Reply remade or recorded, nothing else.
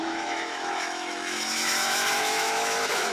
remade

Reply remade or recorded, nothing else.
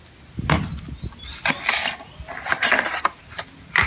recorded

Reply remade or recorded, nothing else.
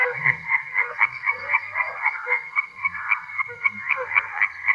remade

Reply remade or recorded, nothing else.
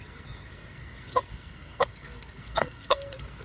remade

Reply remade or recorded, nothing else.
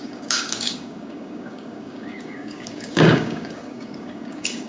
remade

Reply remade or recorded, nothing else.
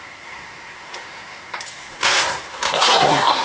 remade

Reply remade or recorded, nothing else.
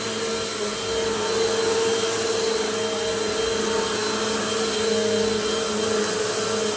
recorded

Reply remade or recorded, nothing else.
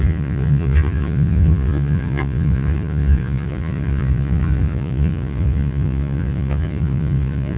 remade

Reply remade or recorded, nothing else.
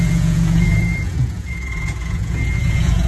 remade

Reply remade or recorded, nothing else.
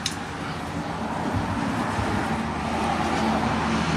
recorded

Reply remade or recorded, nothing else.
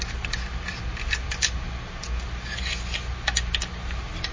recorded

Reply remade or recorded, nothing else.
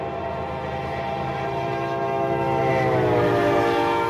recorded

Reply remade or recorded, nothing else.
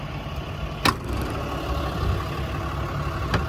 recorded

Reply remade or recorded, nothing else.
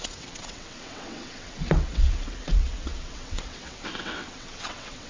remade